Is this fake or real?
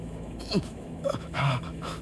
fake